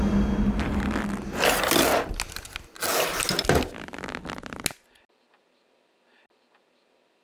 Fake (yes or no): no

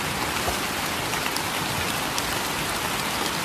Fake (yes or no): no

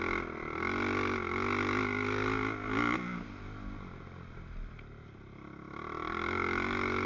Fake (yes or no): no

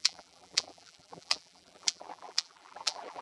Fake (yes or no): yes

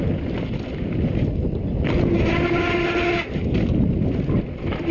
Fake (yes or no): no